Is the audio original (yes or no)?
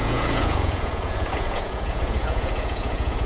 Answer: no